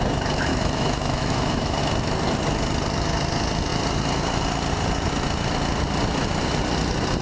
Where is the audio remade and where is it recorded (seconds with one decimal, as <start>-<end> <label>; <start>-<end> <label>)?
0.0-0.5 recorded; 0.5-1.8 remade; 1.8-7.2 recorded